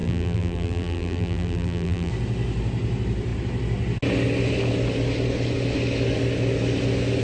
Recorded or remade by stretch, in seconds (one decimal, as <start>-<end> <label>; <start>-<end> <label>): 0.0-2.1 remade; 2.1-7.2 recorded